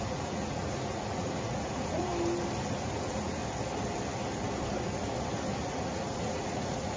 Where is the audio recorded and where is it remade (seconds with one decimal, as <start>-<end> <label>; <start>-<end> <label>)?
0.0-2.1 remade; 2.1-2.7 recorded; 2.7-3.4 remade; 3.4-5.6 recorded; 5.6-7.0 remade